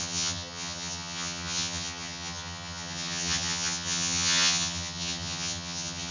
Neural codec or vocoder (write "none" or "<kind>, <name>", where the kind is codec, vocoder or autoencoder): vocoder, HiFi-GAN